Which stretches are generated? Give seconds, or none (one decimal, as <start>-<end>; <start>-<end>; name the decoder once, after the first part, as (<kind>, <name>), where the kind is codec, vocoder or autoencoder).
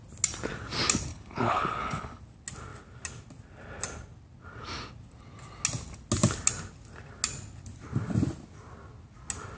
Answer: 1.1-2.2 (codec, HILCodec)